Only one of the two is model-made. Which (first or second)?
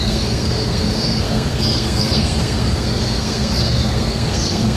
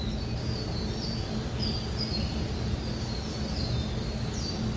first